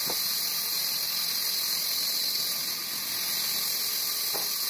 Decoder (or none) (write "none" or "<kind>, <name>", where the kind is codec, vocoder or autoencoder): none